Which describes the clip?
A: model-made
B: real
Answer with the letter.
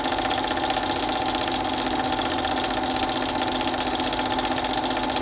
B